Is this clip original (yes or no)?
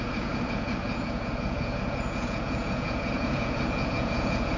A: no